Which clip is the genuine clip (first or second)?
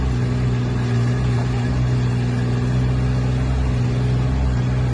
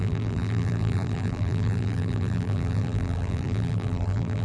first